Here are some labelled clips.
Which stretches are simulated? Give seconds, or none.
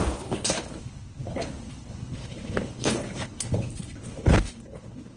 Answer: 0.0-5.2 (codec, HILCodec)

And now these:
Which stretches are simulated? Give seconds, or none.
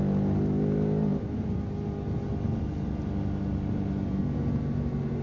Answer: none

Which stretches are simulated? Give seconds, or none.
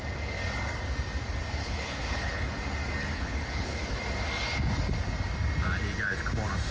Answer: 1.6-2.5 (codec, HILCodec); 3.0-4.0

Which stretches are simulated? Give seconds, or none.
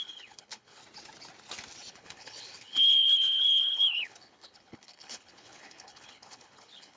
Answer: 0.0-0.8 (codec, HILCodec); 1.9-7.0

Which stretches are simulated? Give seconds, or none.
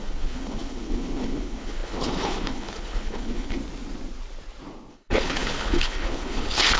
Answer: 0.0-3.6 (codec, HILCodec); 4.9-6.8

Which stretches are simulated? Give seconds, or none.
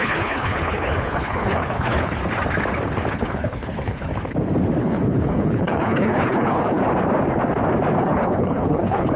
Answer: 0.0-2.2 (codec, HILCodec); 3.1-4.1; 4.8-6.8; 8.0-9.2